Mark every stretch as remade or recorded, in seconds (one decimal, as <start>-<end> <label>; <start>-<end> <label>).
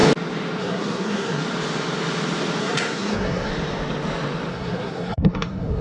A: 0.0-0.6 recorded; 0.6-1.4 remade; 1.4-2.6 recorded; 2.6-3.5 remade; 3.5-4.5 recorded; 4.5-5.8 remade